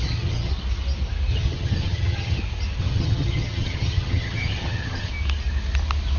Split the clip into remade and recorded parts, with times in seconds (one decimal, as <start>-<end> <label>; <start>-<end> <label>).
0.0-0.5 remade; 0.5-1.3 recorded; 1.3-2.4 remade; 2.4-2.8 recorded; 2.8-5.1 remade; 5.1-6.2 recorded